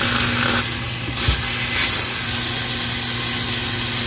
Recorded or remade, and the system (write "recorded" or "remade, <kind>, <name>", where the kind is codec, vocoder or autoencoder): recorded